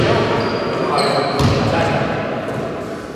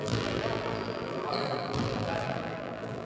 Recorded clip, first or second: first